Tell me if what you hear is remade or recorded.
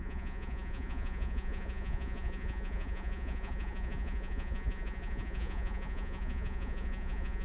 remade